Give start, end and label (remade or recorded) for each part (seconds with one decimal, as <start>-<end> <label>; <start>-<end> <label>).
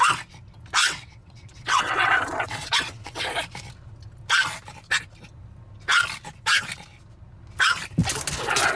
0.0-0.8 recorded; 0.8-3.3 remade; 3.3-8.8 recorded